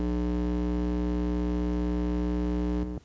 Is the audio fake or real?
real